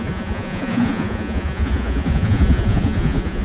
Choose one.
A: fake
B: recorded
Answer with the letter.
A